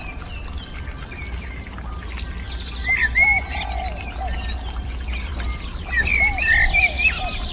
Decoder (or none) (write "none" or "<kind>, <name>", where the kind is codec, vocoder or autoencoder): none